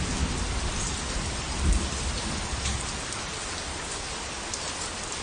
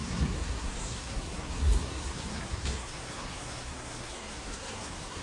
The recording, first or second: first